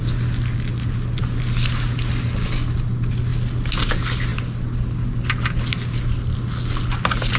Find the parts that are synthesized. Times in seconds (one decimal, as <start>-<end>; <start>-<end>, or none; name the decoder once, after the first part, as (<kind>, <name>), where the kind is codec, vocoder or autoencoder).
none